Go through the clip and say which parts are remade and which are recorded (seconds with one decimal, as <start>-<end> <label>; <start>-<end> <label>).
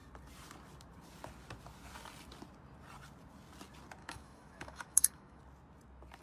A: 0.0-4.0 recorded; 4.0-5.4 remade; 5.4-6.2 recorded